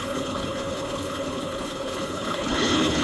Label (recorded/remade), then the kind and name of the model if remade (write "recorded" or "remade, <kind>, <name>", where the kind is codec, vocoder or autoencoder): remade, codec, HILCodec